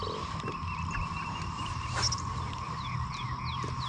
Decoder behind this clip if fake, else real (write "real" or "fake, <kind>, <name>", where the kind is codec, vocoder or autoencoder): real